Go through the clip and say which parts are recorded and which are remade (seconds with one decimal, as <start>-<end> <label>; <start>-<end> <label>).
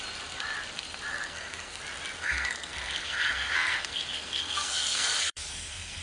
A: 0.0-1.1 recorded; 1.1-1.8 remade; 1.8-2.2 recorded; 2.2-6.0 remade